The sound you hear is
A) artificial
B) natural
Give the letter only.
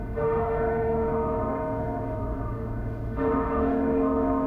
A